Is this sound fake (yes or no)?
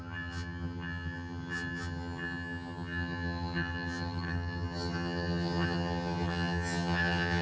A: yes